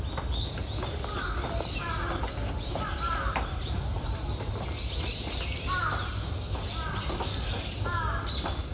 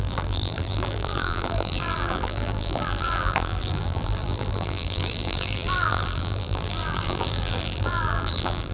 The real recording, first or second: first